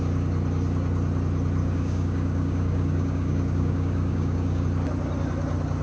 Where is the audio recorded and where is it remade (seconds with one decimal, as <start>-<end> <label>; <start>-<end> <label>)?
0.0-1.6 recorded; 1.6-4.6 remade; 4.6-5.8 recorded